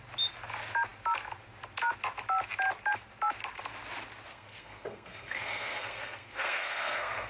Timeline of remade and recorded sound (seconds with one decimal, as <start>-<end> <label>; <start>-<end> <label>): 0.0-4.3 recorded; 4.3-7.3 remade